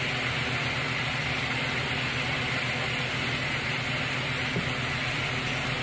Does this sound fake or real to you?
real